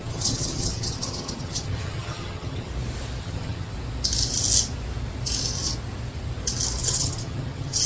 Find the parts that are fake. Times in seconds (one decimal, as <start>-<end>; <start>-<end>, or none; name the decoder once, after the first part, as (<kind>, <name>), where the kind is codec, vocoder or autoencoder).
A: 0.0-2.7 (vocoder, HiFi-GAN); 3.2-3.7; 6.8-7.9